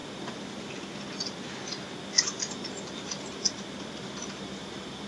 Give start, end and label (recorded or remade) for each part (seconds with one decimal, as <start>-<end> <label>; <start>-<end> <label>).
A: 0.0-5.1 recorded